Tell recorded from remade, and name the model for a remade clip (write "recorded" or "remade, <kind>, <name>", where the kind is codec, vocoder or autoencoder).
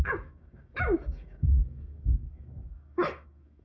remade, autoencoder, DAC-VAE